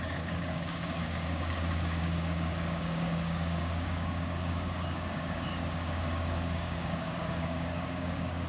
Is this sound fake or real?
fake